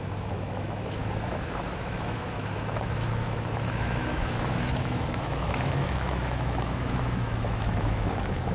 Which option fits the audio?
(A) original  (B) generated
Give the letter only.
B